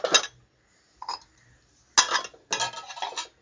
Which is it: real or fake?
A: real